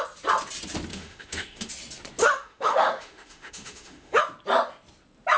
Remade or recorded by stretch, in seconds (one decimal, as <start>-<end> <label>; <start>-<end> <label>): 0.0-0.9 recorded; 0.9-1.7 remade; 1.7-2.2 recorded; 2.2-4.2 remade; 4.2-5.4 recorded